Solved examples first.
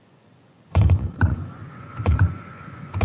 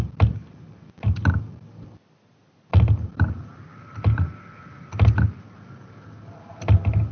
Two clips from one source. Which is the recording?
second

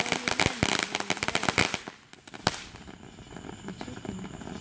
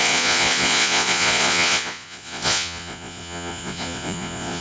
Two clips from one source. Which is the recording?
first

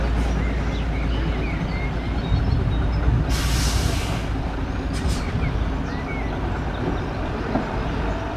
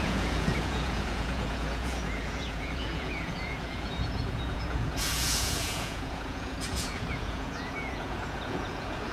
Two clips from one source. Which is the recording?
first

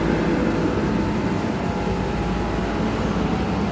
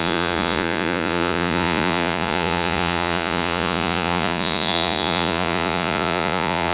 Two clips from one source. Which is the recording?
first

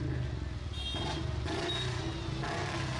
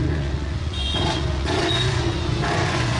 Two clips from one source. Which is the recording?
first